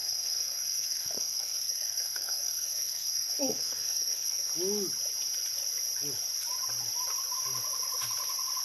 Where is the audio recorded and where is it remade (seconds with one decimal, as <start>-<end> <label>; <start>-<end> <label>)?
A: 0.0-4.5 remade; 4.5-8.6 recorded